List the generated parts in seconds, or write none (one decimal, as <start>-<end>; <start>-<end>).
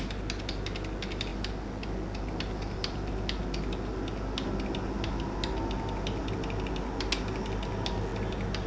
none